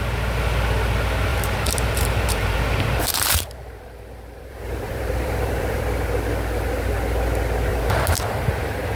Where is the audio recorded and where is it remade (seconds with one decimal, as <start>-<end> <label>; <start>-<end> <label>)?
0.0-1.3 recorded; 1.3-5.8 remade; 5.8-7.7 recorded; 7.7-9.0 remade